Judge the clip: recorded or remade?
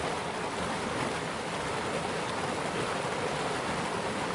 recorded